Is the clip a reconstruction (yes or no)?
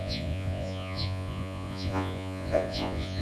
yes